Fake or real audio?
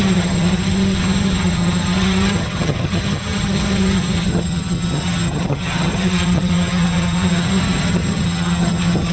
fake